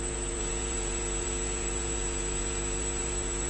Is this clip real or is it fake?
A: fake